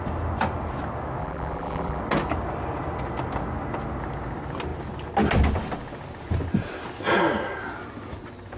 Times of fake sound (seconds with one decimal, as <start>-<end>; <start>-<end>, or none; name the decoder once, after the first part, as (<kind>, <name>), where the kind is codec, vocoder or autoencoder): 1.2-2.0 (vocoder, BigVGAN v2)